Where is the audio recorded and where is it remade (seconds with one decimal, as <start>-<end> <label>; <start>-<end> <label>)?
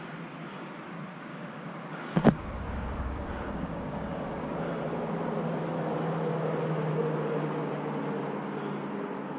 0.0-1.3 recorded; 1.3-4.7 remade; 4.7-9.4 recorded